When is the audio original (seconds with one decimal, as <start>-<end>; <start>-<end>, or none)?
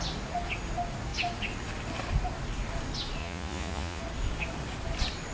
0.0-3.2; 4.0-5.3